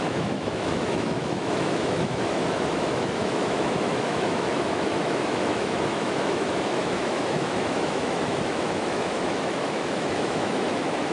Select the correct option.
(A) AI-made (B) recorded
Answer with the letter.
A